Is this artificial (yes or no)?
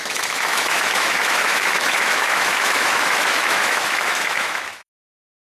yes